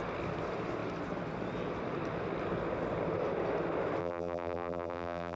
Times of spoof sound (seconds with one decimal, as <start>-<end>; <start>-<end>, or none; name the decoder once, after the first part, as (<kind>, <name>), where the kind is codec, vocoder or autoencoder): 4.0-5.4 (vocoder, BigVGAN v2)